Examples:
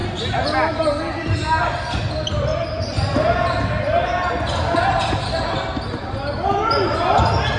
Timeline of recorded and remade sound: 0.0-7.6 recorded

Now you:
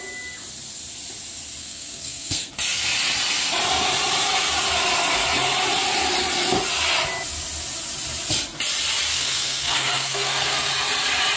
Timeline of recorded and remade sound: 0.0-1.6 recorded; 1.6-2.5 remade; 2.5-9.1 recorded; 9.1-10.7 remade; 10.7-11.4 recorded

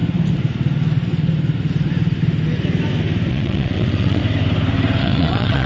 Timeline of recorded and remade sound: 0.0-3.3 recorded; 3.3-4.2 remade; 4.2-5.0 recorded; 5.0-5.7 remade

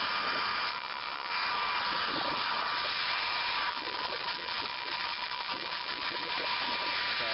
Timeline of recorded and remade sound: 0.0-0.7 recorded; 0.7-1.3 remade; 1.3-3.7 recorded; 3.7-6.3 remade; 6.3-7.3 recorded